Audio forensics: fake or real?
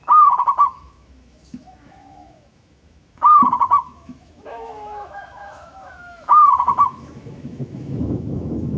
fake